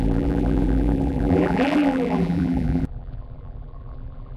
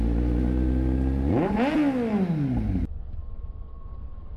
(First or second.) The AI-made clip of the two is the first